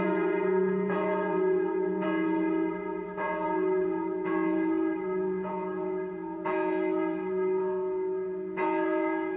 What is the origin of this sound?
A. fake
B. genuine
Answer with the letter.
A